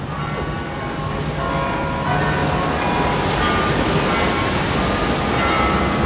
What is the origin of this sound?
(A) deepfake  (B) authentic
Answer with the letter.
B